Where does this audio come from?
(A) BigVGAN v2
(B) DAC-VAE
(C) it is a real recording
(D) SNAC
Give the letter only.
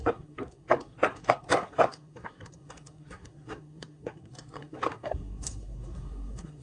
D